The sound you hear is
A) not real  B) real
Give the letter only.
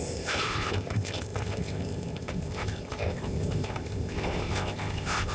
A